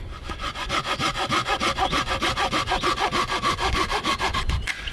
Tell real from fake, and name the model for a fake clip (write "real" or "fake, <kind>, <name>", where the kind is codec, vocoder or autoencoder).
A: fake, vocoder, Vocos